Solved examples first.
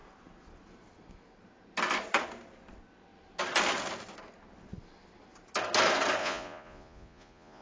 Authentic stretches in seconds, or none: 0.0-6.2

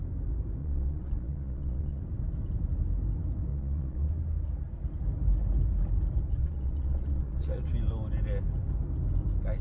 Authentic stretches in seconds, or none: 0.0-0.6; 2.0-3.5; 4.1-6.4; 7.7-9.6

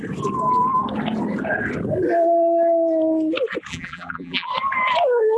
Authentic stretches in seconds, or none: 0.0-3.7; 4.5-5.4

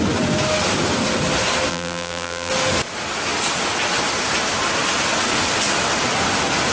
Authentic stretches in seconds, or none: 0.0-1.7; 2.5-6.7

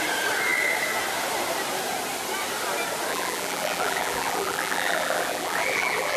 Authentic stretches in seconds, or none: 0.0-3.1

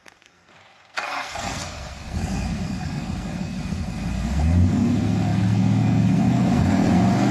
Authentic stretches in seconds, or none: none

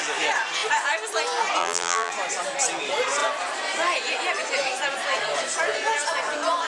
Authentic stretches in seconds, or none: 0.0-1.6; 2.1-6.7

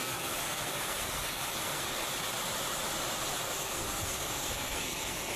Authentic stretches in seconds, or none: 2.0-3.4